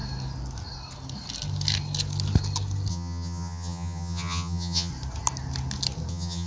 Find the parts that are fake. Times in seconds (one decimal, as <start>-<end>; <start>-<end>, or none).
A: 2.9-4.9; 6.1-6.5